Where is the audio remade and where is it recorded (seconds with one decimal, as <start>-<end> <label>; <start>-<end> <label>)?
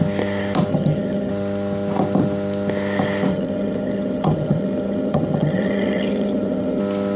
0.0-0.7 recorded; 0.7-1.3 remade; 1.3-3.3 recorded; 3.3-6.8 remade; 6.8-7.2 recorded